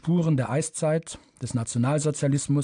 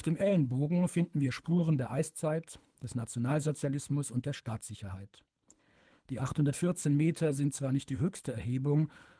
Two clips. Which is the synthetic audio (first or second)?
second